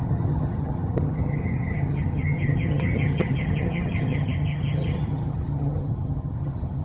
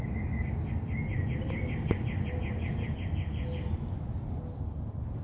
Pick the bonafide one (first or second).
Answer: second